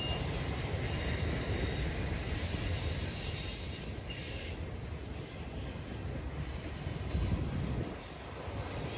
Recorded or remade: recorded